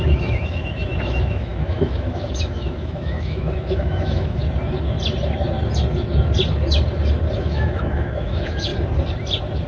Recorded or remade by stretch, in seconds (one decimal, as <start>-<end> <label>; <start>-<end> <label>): 0.0-4.4 remade; 4.4-7.4 recorded; 7.4-8.7 remade; 8.7-9.7 recorded